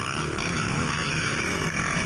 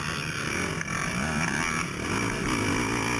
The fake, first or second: first